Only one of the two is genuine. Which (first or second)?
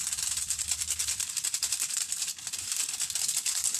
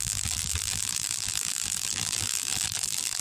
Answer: first